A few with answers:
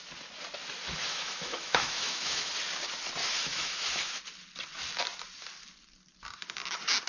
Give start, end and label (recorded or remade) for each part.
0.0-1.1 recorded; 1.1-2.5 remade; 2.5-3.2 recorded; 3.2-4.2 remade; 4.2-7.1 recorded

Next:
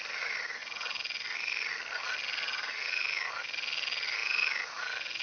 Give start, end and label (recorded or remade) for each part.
0.0-5.2 recorded

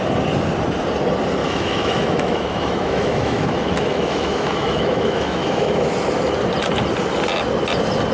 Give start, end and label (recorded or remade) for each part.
0.0-1.4 recorded; 1.4-5.9 remade; 5.9-8.1 recorded

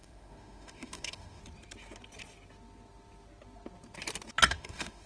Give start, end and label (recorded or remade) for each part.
0.0-1.4 remade; 1.4-4.5 recorded; 4.5-5.1 remade

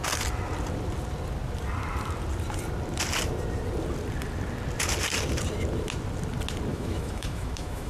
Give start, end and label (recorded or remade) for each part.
0.0-6.7 recorded; 6.7-7.9 remade

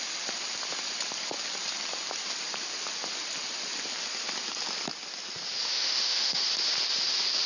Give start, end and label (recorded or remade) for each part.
0.0-5.7 recorded; 5.7-6.4 remade; 6.4-7.5 recorded

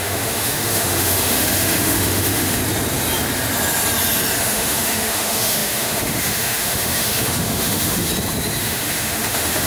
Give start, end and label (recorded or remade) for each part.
0.0-2.6 remade; 2.6-4.4 recorded; 4.4-8.1 remade; 8.1-8.6 recorded; 8.6-9.7 remade